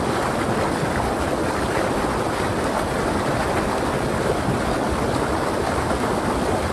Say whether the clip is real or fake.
real